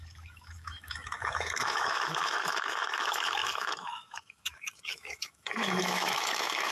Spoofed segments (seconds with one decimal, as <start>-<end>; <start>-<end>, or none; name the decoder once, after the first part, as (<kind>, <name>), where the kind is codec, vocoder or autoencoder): 0.0-6.7 (autoencoder, DAC-VAE)